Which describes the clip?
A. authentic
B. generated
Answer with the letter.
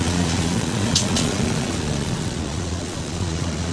B